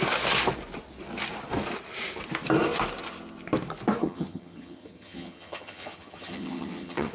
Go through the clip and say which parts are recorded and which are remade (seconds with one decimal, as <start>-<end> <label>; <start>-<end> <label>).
0.0-4.0 recorded; 4.0-7.1 remade